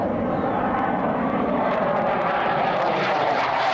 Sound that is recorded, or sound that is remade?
remade